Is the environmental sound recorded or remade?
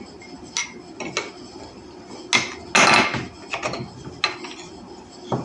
recorded